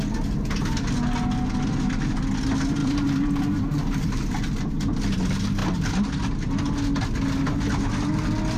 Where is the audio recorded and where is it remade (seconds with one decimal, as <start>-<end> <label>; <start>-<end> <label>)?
0.0-2.8 recorded; 2.8-4.2 remade; 4.2-8.6 recorded